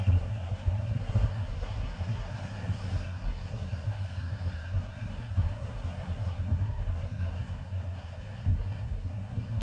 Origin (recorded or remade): remade